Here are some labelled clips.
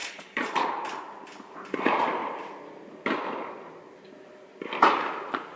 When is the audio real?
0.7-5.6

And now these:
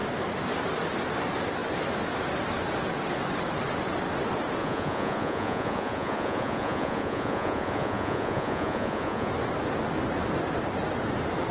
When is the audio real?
0.0-4.6; 9.3-11.5

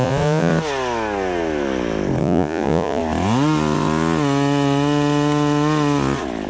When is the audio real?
0.5-2.2; 3.0-6.5